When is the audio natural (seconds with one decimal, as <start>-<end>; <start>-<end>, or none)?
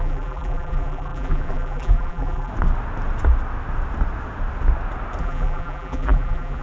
2.5-5.2